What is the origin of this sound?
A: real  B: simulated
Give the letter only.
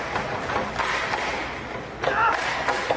A